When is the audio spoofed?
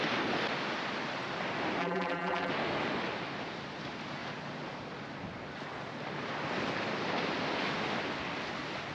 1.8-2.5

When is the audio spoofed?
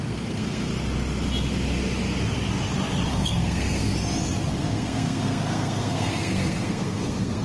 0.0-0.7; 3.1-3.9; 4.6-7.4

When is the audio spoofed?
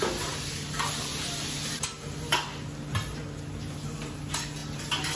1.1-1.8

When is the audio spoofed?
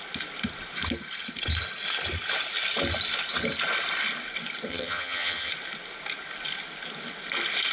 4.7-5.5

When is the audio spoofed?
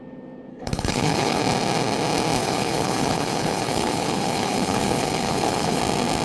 0.5-1.4; 2.4-5.8